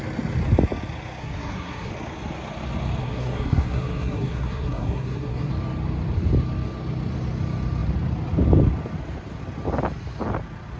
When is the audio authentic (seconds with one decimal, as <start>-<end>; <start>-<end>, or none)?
0.0-1.2; 1.9-3.0; 5.5-10.8